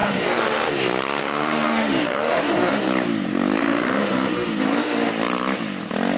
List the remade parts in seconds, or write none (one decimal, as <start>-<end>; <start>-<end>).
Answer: 0.0-0.7; 1.2-2.8; 3.6-5.1

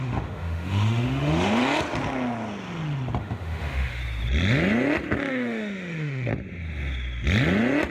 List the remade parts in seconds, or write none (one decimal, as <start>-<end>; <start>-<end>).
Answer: 0.0-1.6; 3.2-4.0; 5.3-6.3

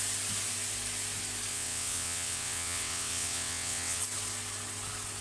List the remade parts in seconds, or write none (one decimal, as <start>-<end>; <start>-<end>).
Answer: 1.5-4.0

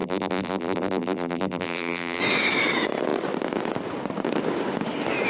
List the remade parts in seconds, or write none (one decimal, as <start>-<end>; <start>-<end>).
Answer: 0.0-2.2